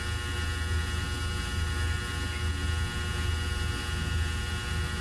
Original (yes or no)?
yes